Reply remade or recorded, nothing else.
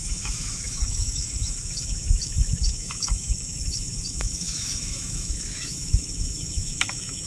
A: remade